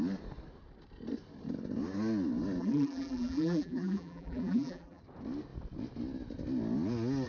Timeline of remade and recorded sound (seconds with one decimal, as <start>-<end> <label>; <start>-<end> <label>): 0.0-2.6 recorded; 2.6-5.0 remade; 5.0-7.3 recorded